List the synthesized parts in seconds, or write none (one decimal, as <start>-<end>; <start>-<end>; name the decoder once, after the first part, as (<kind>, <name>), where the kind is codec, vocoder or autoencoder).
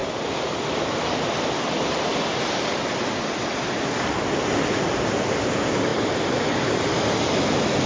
0.0-5.9 (vocoder, BigVGAN v2)